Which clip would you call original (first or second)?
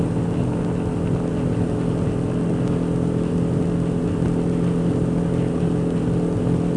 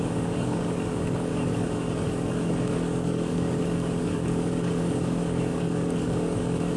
first